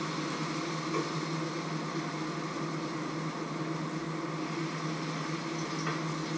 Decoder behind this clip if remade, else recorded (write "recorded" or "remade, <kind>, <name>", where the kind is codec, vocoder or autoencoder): recorded